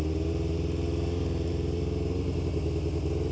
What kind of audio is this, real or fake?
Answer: real